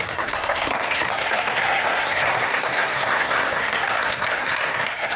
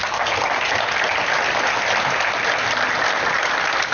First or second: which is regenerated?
first